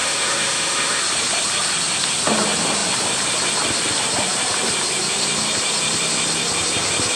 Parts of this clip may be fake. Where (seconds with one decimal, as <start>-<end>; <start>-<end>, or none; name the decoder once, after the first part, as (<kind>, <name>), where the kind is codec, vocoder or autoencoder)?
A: 0.0-1.0 (autoencoder, DAC-VAE)